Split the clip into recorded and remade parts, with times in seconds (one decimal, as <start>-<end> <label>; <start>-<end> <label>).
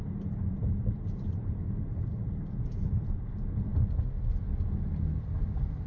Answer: 0.0-3.7 remade; 3.7-5.9 recorded